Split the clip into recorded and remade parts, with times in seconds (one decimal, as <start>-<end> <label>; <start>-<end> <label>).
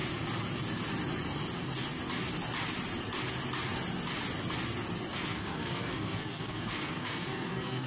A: 0.0-5.3 recorded; 5.3-7.9 remade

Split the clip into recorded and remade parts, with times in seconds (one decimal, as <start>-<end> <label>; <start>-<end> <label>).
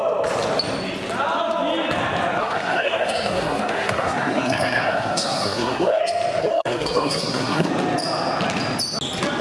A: 0.0-2.4 recorded; 2.4-6.0 remade; 6.0-6.4 recorded; 6.4-7.7 remade; 7.7-9.4 recorded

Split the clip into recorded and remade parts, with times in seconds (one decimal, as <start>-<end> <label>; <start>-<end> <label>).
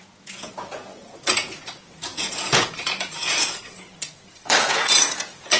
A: 0.0-5.6 remade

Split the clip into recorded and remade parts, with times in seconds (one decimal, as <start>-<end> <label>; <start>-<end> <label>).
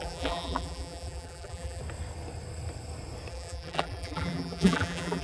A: 0.0-1.8 remade; 1.8-3.3 recorded; 3.3-5.2 remade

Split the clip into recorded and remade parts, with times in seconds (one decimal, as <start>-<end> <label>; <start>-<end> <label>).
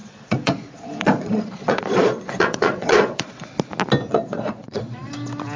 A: 0.0-3.4 remade; 3.4-4.1 recorded; 4.1-5.1 remade; 5.1-5.6 recorded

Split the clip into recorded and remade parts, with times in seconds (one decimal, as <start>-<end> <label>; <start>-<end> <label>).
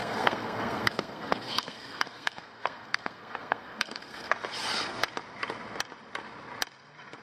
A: 0.0-4.3 remade; 4.3-7.2 recorded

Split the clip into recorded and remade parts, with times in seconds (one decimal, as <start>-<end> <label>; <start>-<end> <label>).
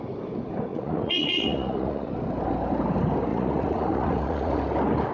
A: 0.0-0.7 recorded; 0.7-2.1 remade; 2.1-3.3 recorded; 3.3-4.6 remade; 4.6-5.1 recorded